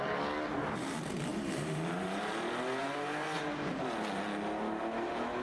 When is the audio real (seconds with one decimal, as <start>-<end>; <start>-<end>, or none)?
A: 0.0-1.3; 2.2-2.8; 4.2-5.4

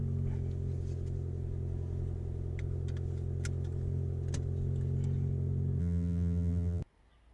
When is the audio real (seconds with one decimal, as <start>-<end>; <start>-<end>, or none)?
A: 0.0-5.8; 6.8-7.3

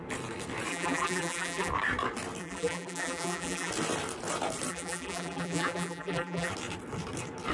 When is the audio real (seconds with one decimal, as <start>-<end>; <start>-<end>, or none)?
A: 0.0-0.7; 1.7-2.4; 3.7-4.7; 6.5-7.5

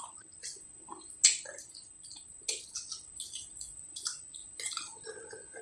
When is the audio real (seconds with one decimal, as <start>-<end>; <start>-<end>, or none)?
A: 0.4-3.8; 4.4-5.6